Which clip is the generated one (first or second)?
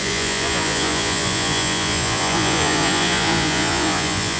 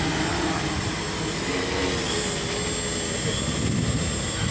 first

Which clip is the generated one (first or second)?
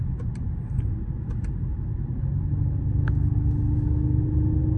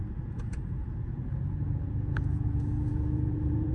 second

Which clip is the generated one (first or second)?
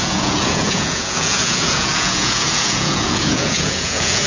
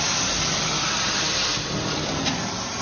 first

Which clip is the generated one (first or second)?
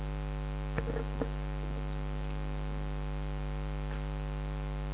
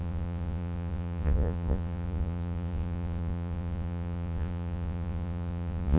second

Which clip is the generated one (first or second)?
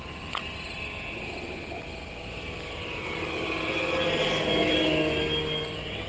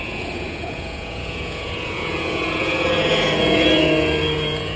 second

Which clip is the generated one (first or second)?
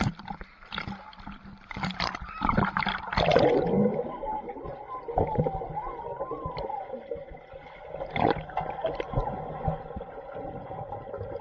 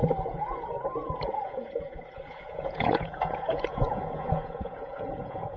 second